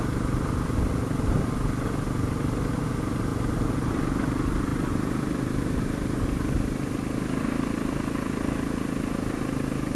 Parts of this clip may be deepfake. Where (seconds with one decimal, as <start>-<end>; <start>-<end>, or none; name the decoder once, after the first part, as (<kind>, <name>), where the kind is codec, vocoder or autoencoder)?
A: none

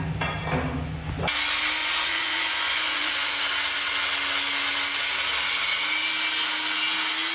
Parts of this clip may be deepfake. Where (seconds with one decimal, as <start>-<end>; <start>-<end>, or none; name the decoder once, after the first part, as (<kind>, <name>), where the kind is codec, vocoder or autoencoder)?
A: 1.8-3.3 (vocoder, Vocos)